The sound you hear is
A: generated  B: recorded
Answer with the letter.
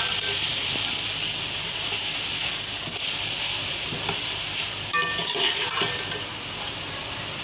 B